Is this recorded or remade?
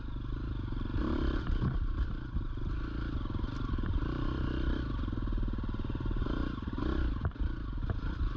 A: recorded